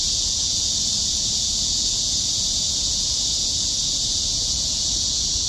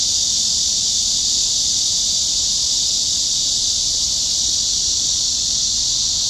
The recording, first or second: second